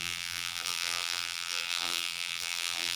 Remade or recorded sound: remade